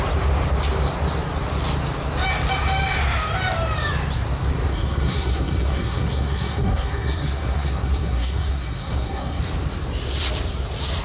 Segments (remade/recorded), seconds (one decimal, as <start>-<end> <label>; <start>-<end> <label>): 0.0-4.7 recorded; 4.7-9.4 remade; 9.4-11.0 recorded